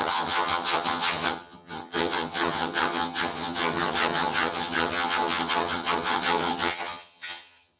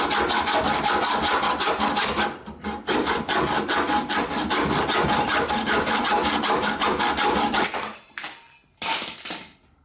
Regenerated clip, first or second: first